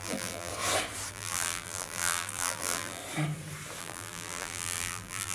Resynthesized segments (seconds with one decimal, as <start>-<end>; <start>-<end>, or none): 0.0-0.5; 1.1-3.0; 3.8-5.3